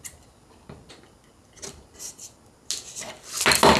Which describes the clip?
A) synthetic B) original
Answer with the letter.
B